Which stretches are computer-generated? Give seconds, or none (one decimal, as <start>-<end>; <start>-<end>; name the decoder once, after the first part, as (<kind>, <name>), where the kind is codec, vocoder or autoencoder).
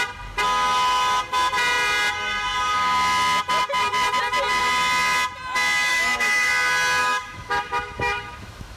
5.9-6.5 (autoencoder, DAC-VAE); 7.0-8.8